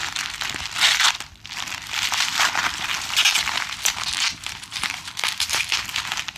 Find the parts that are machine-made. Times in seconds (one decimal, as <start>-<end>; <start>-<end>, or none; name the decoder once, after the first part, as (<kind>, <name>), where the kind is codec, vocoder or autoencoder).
0.0-3.6 (vocoder, BigVGAN v2); 4.7-6.4